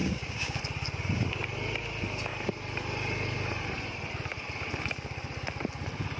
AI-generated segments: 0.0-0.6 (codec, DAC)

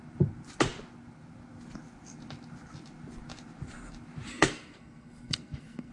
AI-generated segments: 4.3-5.9 (codec, SNAC)

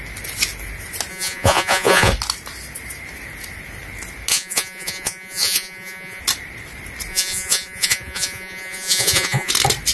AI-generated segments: 1.1-2.1 (vocoder, Vocos); 4.3-6.2; 7.1-9.5

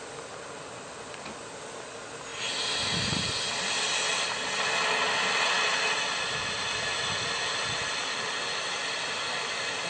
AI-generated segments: none

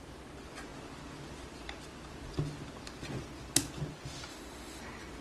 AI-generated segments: 4.3-4.8 (autoencoder, DAC-VAE)